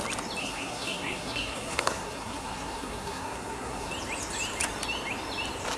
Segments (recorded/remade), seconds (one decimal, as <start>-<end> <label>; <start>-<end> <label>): 0.0-0.4 recorded; 0.4-3.9 remade; 3.9-5.8 recorded